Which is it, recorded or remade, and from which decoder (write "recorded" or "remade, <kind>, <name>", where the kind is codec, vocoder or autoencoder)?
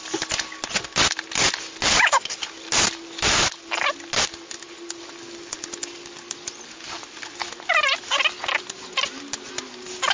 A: recorded